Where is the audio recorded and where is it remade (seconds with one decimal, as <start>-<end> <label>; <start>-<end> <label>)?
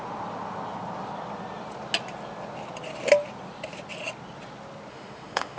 0.0-4.9 recorded; 4.9-5.6 remade